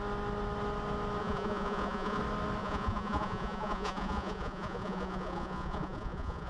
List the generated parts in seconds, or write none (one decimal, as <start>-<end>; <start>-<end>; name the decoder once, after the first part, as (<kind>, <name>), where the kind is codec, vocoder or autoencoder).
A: 1.2-2.2 (vocoder, Vocos); 2.6-6.5